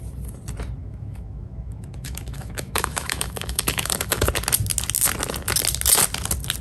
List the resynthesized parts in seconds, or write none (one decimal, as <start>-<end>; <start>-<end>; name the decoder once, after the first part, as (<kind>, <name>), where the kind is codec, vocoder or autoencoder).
0.8-4.3 (autoencoder, DAC-VAE)